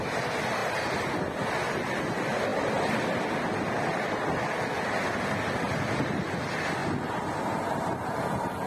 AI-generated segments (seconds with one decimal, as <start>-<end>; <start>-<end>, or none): none